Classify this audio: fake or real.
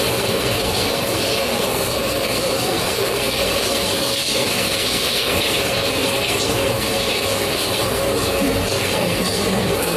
fake